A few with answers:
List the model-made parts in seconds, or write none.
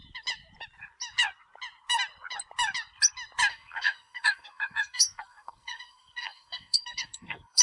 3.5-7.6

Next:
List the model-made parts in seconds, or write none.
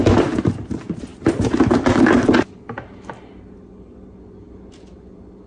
none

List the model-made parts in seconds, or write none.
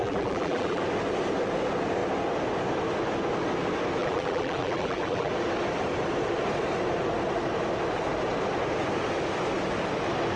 0.0-0.8; 4.0-5.3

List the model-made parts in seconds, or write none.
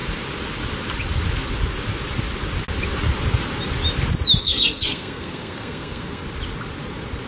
4.4-6.2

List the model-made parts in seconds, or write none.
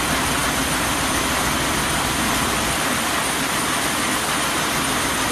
none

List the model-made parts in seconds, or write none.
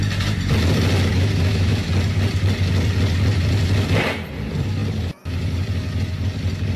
1.1-1.9